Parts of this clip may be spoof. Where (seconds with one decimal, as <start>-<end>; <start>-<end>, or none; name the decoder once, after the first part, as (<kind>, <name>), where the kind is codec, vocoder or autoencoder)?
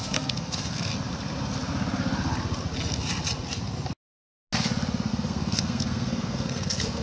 0.0-0.9 (codec, SNAC); 5.1-7.0